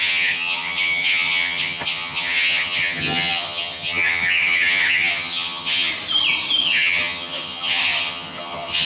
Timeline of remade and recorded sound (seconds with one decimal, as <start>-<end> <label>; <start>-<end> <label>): 0.0-5.9 remade; 5.9-6.6 recorded; 6.6-8.8 remade

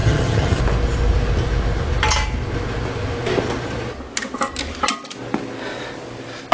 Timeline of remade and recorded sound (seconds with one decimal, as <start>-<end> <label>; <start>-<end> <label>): 0.0-0.6 remade; 0.6-6.5 recorded

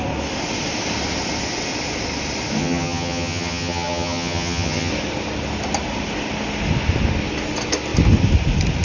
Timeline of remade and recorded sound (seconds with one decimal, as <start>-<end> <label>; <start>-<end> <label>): 0.0-2.6 recorded; 2.6-4.9 remade; 4.9-8.8 recorded

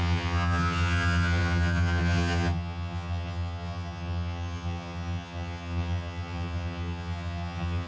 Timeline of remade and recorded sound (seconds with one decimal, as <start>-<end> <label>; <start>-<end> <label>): 0.0-7.9 remade

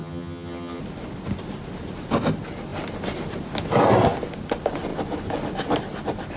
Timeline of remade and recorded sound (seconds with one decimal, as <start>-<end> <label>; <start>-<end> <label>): 0.0-0.8 remade; 0.8-6.4 recorded

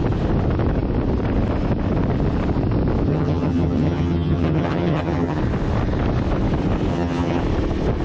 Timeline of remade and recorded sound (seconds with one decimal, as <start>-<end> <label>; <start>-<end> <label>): 0.0-3.1 recorded; 3.1-5.4 remade; 5.4-6.9 recorded; 6.9-7.4 remade; 7.4-8.0 recorded

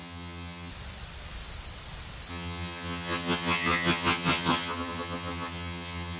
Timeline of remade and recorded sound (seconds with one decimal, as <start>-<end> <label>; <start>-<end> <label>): 0.0-0.7 remade; 0.7-2.3 recorded; 2.3-6.2 remade

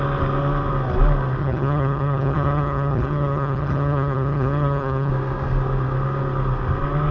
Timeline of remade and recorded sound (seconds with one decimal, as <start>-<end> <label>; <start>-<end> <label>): 0.0-1.4 recorded; 1.4-5.1 remade; 5.1-7.1 recorded